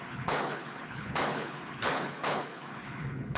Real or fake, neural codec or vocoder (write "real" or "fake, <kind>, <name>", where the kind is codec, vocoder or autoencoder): fake, codec, HILCodec